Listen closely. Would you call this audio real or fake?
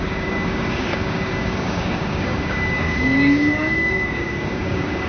fake